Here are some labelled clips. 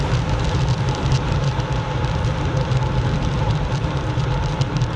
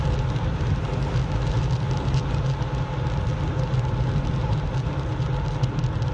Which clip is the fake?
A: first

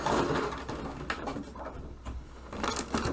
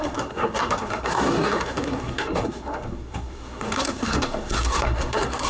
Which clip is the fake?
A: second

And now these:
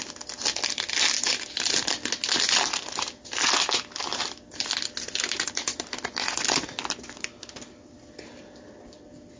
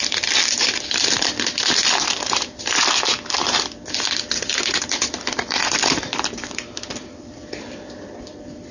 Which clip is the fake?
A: second